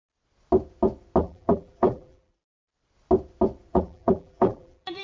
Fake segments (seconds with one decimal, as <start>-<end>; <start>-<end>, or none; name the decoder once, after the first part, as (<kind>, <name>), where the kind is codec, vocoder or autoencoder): 1.2-2.4 (vocoder, BigVGAN v2); 3.7-5.0